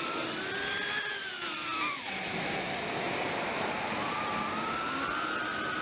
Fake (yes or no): no